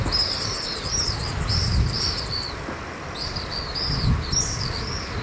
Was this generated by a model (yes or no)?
yes